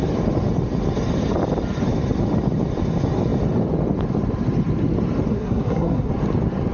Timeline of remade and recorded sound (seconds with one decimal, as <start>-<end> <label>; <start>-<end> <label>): 0.0-5.3 recorded; 5.3-6.1 remade; 6.1-6.7 recorded